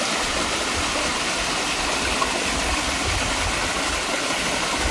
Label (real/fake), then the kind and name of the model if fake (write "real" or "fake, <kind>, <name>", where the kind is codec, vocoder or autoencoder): real